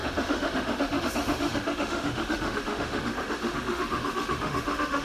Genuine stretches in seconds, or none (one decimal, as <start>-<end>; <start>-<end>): none